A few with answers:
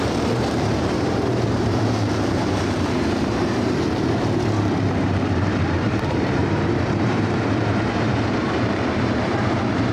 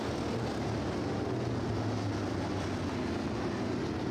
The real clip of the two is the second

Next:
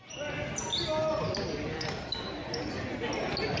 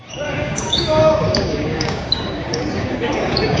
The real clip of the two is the first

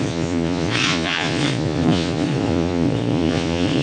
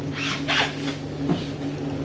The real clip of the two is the second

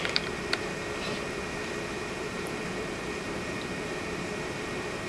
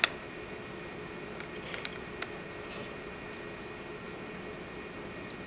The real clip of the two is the second